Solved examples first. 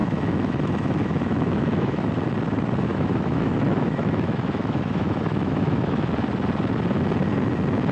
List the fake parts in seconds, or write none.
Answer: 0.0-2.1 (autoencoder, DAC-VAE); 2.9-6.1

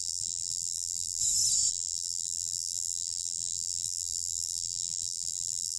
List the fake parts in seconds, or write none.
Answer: 0.0-1.2 (vocoder, BigVGAN v2); 1.7-5.8

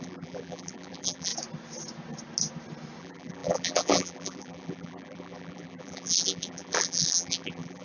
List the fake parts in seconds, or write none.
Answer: 0.0-1.3 (vocoder, BigVGAN v2); 3.0-7.8

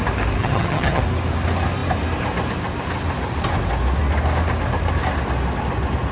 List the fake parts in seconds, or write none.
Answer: 0.4-1.0 (vocoder, HiFi-GAN)

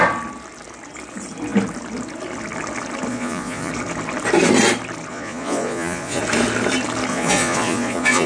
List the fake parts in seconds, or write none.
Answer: 3.1-3.7 (vocoder, Vocos); 5.1-6.2; 7.1-8.3